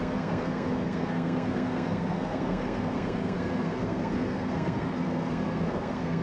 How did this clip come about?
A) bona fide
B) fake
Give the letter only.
B